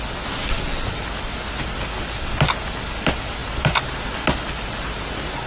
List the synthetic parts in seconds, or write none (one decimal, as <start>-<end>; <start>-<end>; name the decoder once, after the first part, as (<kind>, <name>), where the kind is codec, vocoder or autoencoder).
none